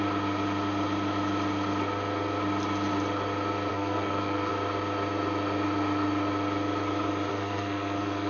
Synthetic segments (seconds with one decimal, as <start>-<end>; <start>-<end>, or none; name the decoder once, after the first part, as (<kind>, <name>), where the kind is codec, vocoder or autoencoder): 3.7-4.5 (codec, SNAC); 7.3-8.3